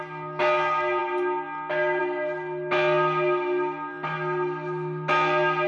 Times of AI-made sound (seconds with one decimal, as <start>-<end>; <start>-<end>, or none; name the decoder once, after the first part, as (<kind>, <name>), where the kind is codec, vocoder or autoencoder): none